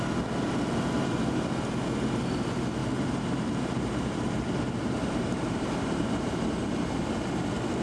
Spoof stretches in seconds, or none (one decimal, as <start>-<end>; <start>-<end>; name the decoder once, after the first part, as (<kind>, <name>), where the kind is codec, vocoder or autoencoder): 2.8-6.4 (vocoder, BigVGAN v2)